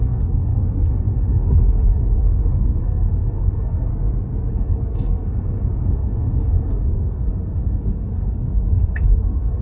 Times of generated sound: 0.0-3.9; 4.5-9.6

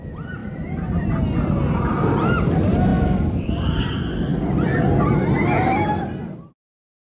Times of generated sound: 2.9-3.5

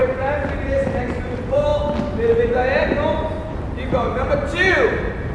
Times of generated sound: 0.0-1.7; 4.7-5.3

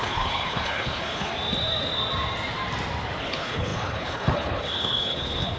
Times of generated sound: 0.0-1.3; 3.2-5.6